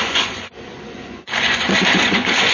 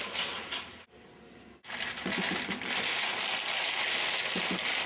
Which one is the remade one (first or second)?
first